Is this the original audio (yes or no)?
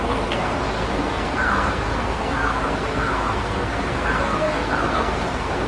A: no